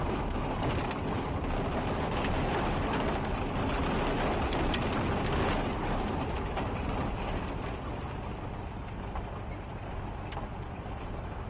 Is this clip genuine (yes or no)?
yes